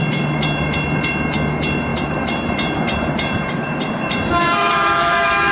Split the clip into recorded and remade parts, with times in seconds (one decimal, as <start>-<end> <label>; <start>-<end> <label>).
0.0-1.9 recorded; 1.9-5.5 remade